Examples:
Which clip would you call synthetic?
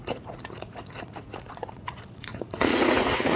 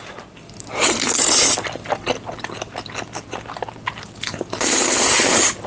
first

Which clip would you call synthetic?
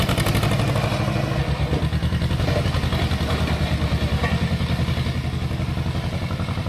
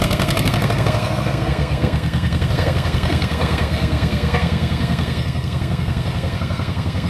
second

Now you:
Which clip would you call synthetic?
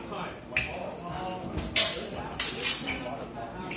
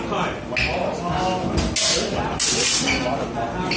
first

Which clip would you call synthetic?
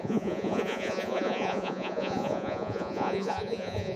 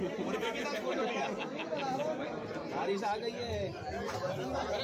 first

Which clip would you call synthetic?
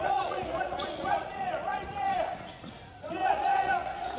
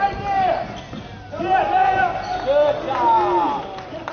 first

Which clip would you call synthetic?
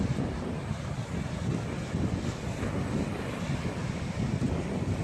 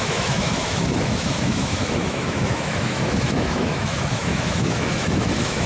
second